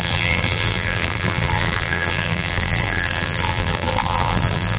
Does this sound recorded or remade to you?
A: remade